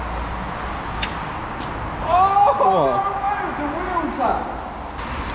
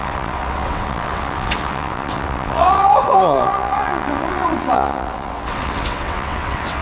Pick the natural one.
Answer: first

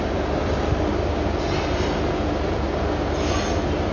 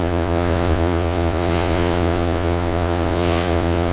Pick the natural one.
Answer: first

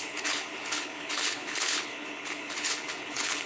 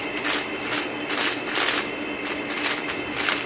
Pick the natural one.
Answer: second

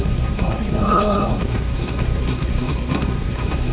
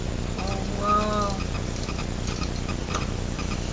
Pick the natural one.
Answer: second